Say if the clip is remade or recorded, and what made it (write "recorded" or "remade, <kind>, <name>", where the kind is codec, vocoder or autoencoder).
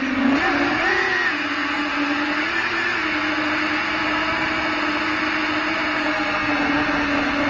recorded